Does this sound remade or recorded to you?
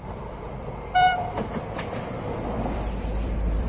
remade